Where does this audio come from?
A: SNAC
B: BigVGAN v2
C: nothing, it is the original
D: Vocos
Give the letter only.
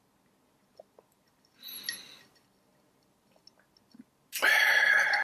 C